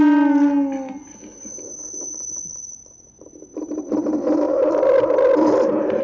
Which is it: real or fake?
real